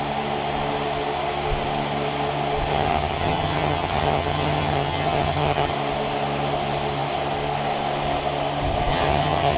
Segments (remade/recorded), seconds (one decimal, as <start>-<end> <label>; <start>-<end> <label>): 0.0-2.7 recorded; 2.7-5.7 remade; 5.7-8.9 recorded; 8.9-9.6 remade